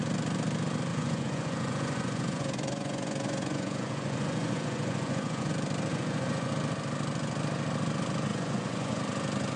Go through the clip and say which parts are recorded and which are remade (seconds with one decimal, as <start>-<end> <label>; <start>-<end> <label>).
0.0-0.9 recorded; 0.9-5.5 remade; 5.5-5.9 recorded; 5.9-6.5 remade; 6.5-8.3 recorded; 8.3-9.0 remade; 9.0-9.6 recorded